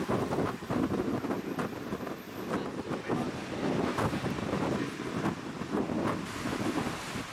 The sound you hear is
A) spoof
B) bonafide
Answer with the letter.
B